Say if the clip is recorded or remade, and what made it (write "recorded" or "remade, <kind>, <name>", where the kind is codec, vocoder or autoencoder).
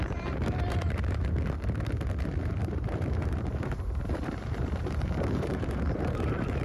remade, vocoder, BigVGAN v2